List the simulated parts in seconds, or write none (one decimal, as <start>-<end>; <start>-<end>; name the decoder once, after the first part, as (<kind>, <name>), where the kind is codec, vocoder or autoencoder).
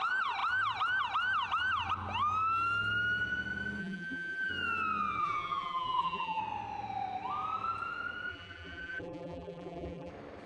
3.8-4.5 (vocoder, BigVGAN v2); 5.2-6.4; 8.3-10.1